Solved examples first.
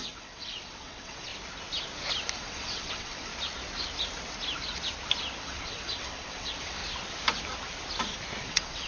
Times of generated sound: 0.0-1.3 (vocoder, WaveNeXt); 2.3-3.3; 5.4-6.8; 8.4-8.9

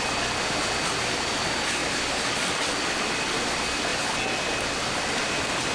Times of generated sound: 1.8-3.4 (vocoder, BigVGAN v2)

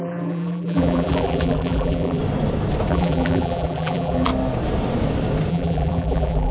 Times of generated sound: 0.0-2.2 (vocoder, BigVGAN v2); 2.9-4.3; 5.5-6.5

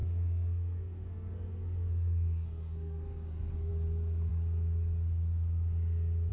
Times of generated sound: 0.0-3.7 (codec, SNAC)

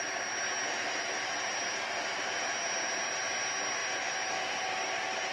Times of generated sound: none

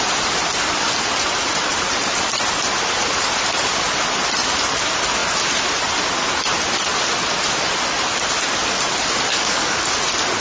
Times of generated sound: 9.3-9.9 (codec, DAC)